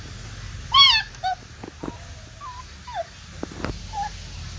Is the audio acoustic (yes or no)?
yes